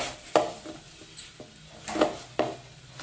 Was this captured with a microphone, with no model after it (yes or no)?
yes